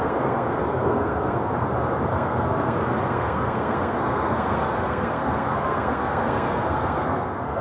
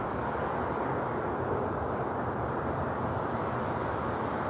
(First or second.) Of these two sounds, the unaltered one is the second